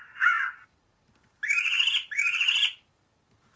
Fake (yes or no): no